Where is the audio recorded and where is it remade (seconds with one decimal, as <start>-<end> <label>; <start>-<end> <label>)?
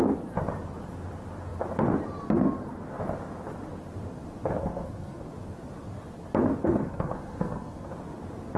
0.0-4.6 recorded; 4.6-5.3 remade; 5.3-6.6 recorded; 6.6-7.9 remade; 7.9-8.6 recorded